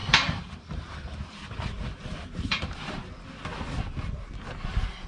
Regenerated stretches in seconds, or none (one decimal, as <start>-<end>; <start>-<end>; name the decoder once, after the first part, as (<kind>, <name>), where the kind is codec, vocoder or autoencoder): 0.0-3.1 (vocoder, BigVGAN v2)